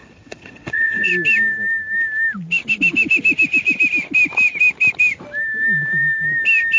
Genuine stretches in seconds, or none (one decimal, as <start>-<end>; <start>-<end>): 1.1-6.8